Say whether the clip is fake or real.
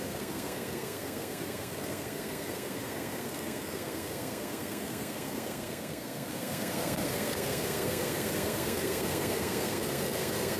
fake